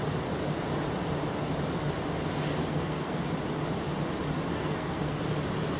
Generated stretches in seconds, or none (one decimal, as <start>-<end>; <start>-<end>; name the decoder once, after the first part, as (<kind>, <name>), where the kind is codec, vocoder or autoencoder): 2.6-3.2 (codec, SNAC); 4.5-5.2